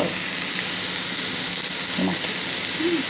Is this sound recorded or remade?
recorded